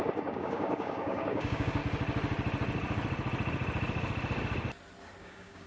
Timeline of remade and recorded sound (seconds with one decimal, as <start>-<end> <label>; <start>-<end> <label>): 0.0-1.8 remade; 1.8-5.2 recorded; 5.2-5.7 remade